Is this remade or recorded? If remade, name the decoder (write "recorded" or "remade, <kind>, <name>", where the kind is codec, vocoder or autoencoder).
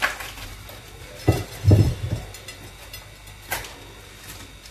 recorded